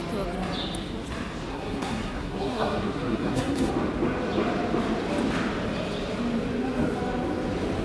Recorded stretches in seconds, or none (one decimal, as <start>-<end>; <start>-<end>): 0.0-1.5; 3.7-7.8